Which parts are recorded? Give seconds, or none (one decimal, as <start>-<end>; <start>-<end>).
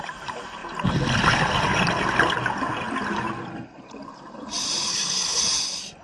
0.0-4.9; 5.4-6.0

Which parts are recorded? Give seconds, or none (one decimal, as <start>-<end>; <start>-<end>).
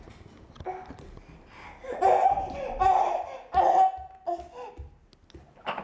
0.0-1.9; 3.0-5.8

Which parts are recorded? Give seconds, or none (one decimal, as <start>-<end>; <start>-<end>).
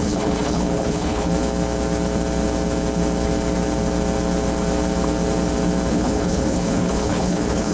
1.3-5.9